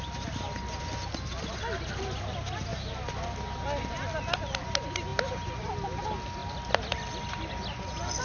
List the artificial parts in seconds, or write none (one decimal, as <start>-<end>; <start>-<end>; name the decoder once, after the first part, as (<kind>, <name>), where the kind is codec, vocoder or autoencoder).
none